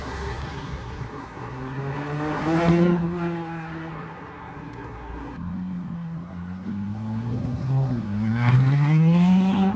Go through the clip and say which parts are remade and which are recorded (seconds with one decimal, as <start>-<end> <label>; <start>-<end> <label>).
0.0-9.8 remade